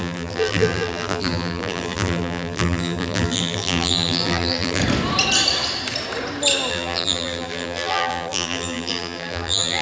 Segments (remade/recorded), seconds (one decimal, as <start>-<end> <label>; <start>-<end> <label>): 0.0-4.8 remade; 4.8-6.7 recorded; 6.7-9.8 remade